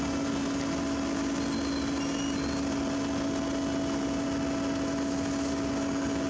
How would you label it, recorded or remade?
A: recorded